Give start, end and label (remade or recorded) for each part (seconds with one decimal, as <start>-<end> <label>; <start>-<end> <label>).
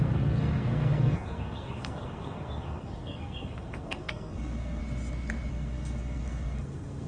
0.0-4.8 remade; 4.8-5.5 recorded; 5.5-7.1 remade